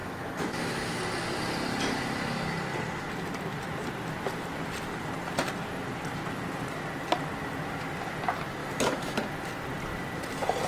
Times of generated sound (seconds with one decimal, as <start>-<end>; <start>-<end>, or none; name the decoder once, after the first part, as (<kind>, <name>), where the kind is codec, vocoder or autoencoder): 0.0-1.0 (autoencoder, DAC-VAE); 8.6-9.2